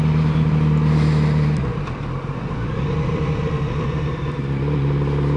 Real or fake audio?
real